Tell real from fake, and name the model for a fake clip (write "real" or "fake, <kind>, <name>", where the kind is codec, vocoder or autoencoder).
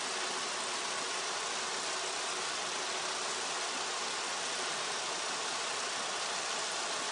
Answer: real